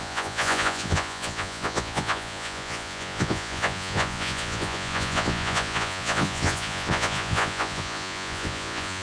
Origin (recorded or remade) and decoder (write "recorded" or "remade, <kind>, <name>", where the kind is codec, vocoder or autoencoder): remade, vocoder, Vocos